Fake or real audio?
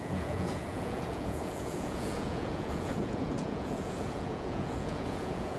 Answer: fake